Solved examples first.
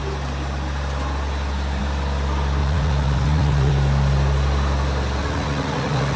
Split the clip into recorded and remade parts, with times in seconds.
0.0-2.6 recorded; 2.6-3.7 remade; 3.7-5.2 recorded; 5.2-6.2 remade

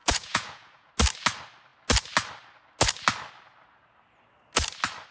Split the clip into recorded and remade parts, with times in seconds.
0.0-0.9 remade; 0.9-5.1 recorded

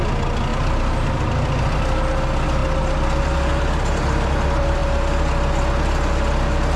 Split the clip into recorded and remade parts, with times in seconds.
0.0-6.8 recorded

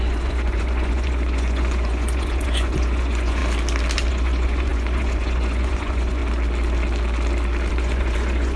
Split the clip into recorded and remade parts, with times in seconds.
0.0-3.4 remade; 3.4-4.1 recorded; 4.1-6.2 remade; 6.2-7.7 recorded; 7.7-8.6 remade

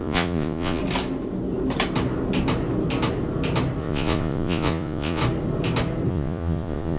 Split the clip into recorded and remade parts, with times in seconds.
0.0-0.8 remade; 0.8-3.8 recorded; 3.8-5.2 remade; 5.2-6.1 recorded; 6.1-7.0 remade

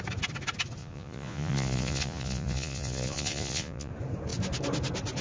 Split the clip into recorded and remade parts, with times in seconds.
0.0-0.8 recorded; 0.8-3.9 remade; 3.9-5.2 recorded